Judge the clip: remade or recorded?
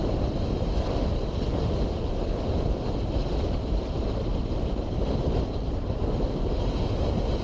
recorded